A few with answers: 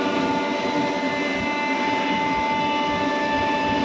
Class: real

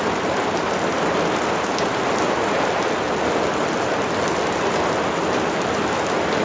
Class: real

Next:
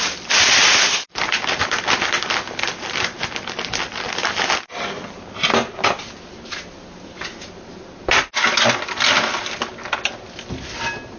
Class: real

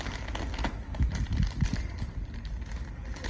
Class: real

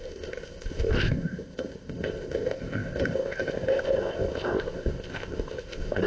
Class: fake